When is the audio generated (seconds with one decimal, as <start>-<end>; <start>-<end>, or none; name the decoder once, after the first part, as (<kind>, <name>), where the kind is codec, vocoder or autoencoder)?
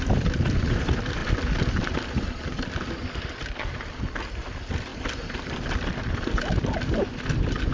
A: none